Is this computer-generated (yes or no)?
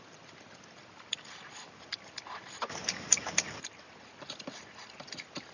no